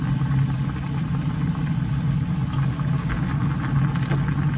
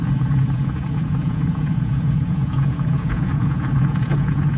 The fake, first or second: second